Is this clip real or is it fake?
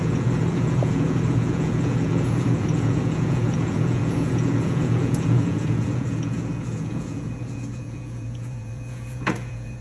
fake